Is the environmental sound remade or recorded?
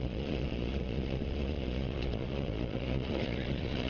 remade